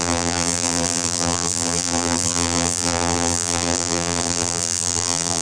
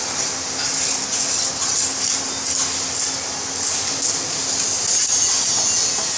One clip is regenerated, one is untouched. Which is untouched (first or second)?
second